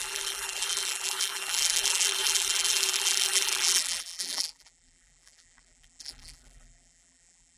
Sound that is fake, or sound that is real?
fake